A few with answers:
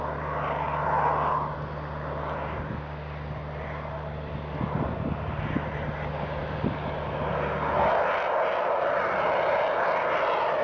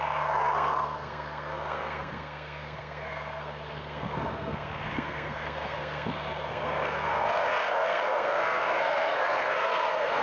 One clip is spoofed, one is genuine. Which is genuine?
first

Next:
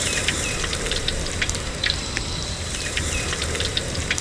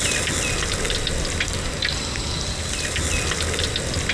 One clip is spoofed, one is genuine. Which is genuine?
second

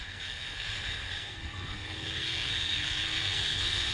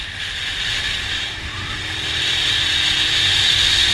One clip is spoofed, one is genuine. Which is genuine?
second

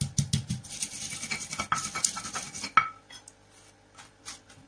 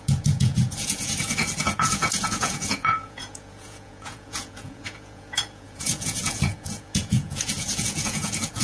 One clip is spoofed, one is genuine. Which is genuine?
first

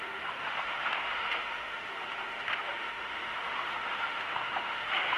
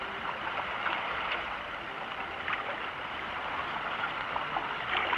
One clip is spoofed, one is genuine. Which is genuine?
second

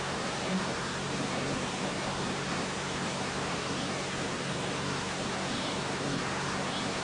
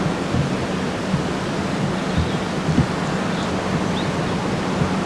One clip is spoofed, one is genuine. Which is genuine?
second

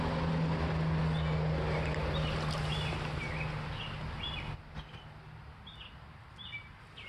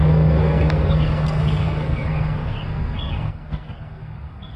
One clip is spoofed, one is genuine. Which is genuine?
first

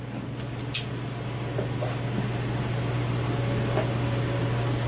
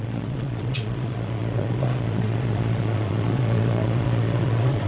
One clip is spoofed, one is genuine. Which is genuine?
first